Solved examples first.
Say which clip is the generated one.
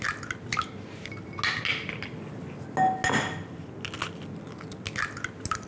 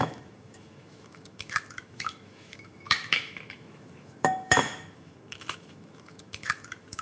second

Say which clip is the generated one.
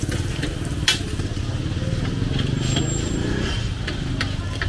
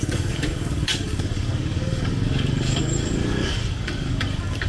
second